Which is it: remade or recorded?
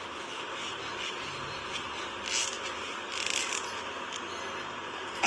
recorded